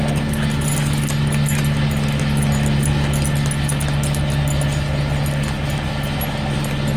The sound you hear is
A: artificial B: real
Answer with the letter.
B